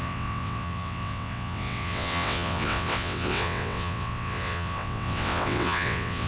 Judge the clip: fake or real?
fake